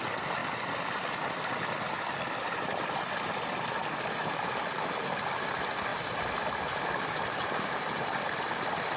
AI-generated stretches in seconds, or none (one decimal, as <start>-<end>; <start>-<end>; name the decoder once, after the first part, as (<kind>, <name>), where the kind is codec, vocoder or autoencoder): none